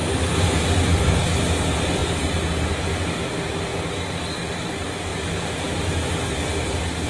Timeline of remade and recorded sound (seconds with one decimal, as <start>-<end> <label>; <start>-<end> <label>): 0.0-7.1 recorded